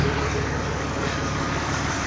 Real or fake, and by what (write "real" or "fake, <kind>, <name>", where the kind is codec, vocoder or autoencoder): fake, codec, DAC